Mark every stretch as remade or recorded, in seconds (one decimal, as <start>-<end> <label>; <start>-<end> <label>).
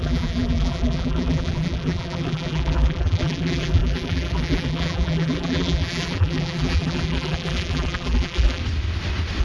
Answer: 0.0-8.6 remade; 8.6-9.4 recorded